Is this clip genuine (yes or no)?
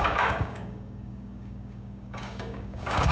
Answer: no